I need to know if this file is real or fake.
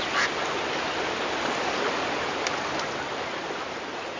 real